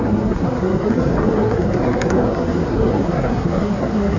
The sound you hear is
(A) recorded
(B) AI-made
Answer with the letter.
B